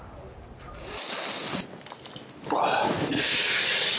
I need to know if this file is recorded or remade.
recorded